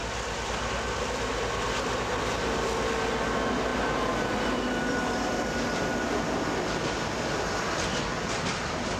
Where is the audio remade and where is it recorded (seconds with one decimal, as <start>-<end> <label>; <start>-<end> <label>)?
0.0-9.0 recorded